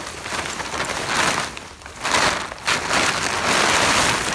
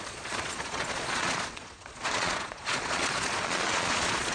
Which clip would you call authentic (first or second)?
first